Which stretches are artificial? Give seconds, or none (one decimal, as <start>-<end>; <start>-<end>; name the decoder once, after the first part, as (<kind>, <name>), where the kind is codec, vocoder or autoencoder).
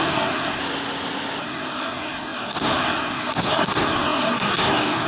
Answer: 0.0-0.6 (codec, SNAC); 1.4-5.1